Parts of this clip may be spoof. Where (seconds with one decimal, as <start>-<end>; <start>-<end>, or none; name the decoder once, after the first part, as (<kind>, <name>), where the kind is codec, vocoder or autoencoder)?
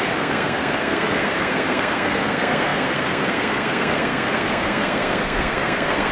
0.0-6.1 (codec, SNAC)